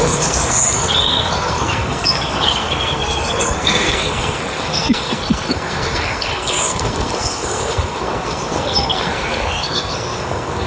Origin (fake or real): fake